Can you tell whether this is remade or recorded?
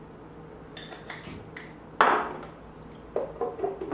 recorded